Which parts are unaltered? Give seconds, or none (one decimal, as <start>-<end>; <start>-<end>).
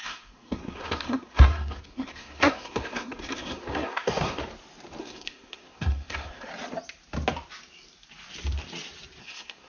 4.4-5.0; 6.5-9.2